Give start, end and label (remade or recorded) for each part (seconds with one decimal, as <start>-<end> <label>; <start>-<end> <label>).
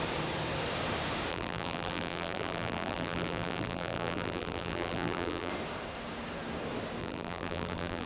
0.0-1.3 recorded; 1.3-5.5 remade; 5.5-7.0 recorded; 7.0-8.1 remade